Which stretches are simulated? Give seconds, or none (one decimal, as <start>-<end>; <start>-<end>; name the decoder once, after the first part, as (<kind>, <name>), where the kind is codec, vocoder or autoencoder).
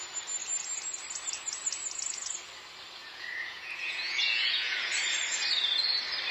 3.0-4.9 (vocoder, Vocos)